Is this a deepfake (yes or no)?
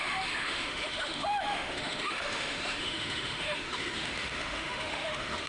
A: yes